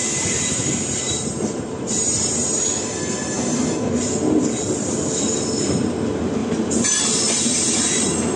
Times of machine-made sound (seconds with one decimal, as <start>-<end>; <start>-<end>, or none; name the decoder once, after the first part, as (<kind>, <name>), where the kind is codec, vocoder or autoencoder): 0.0-2.6 (vocoder, BigVGAN v2); 6.4-7.0

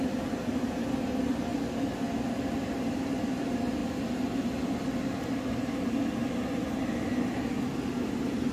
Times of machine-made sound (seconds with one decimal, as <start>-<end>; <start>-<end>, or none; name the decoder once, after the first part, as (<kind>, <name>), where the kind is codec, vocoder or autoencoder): 0.0-1.5 (vocoder, BigVGAN v2); 2.3-3.8; 7.9-8.5

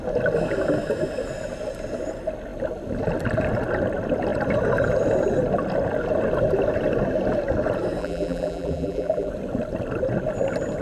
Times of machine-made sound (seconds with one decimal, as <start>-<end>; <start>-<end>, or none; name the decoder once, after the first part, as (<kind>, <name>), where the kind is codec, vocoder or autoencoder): 8.0-9.3 (vocoder, BigVGAN v2)

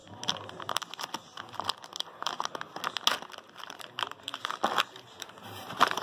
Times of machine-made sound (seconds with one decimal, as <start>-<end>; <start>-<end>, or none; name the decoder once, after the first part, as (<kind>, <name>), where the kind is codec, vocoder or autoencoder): 3.6-4.3 (vocoder, BigVGAN v2); 5.2-6.0

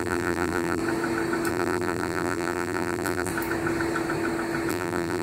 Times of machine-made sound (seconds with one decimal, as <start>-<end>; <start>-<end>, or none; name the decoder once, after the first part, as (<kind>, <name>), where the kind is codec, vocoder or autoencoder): 0.0-0.8 (vocoder, BigVGAN v2); 1.5-3.3; 4.7-5.2

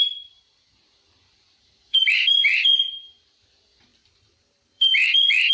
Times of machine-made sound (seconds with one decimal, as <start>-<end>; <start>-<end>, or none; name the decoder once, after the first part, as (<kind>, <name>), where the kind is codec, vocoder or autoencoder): 0.0-5.5 (vocoder, BigVGAN v2)

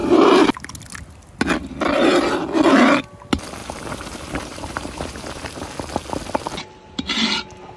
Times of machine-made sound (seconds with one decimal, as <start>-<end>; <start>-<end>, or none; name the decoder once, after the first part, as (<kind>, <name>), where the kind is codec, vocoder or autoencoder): 3.6-5.7 (vocoder, BigVGAN v2)